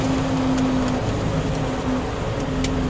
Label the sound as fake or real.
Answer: real